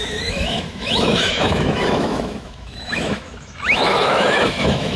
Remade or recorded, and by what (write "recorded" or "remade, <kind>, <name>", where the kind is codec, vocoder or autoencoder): remade, autoencoder, DAC-VAE